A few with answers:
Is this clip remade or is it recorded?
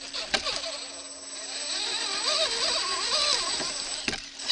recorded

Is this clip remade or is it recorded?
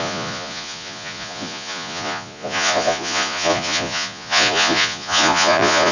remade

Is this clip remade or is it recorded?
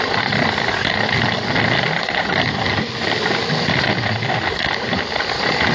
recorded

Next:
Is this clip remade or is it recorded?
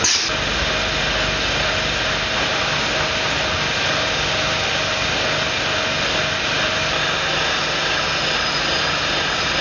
recorded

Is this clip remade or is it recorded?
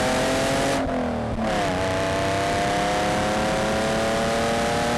recorded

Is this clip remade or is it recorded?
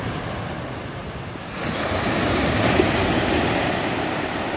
recorded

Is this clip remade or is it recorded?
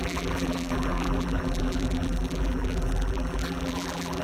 remade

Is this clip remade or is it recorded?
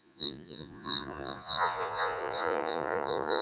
remade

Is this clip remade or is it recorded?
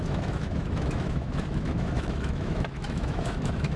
remade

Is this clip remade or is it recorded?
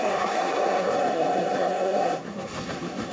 remade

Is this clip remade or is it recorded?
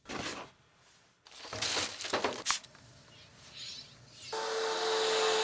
recorded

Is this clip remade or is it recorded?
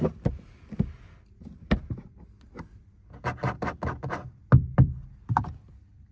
recorded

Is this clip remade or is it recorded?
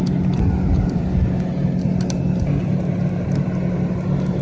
recorded